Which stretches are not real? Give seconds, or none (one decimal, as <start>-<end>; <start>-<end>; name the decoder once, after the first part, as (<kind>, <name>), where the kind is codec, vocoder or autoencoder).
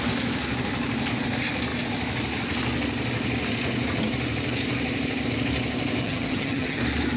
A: 6.0-6.8 (vocoder, HiFi-GAN)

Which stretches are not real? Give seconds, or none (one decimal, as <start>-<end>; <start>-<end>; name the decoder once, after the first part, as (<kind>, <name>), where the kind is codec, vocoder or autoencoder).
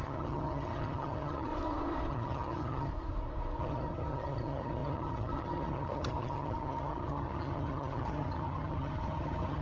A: 0.0-1.5 (vocoder, HiFi-GAN); 2.1-2.9; 3.6-9.6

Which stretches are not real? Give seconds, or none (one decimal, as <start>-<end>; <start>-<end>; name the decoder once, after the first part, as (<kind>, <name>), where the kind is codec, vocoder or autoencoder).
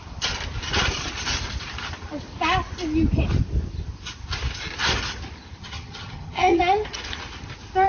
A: 5.6-6.6 (vocoder, HiFi-GAN)